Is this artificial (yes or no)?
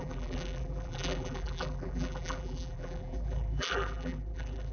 yes